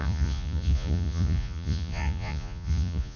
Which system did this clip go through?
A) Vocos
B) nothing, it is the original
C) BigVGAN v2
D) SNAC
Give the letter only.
A